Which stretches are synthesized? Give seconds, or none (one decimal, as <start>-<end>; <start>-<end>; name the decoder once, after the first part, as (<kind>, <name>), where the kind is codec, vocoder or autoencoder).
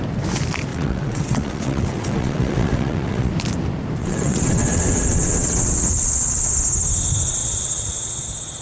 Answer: 0.7-3.3 (vocoder, WaveNeXt); 4.0-6.5; 7.4-8.2